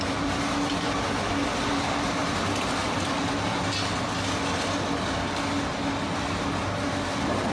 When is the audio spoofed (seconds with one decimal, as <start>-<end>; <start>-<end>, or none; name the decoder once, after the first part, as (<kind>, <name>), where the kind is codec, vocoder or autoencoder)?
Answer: 2.2-2.7 (vocoder, BigVGAN v2)